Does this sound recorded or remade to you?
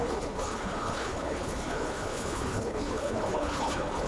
remade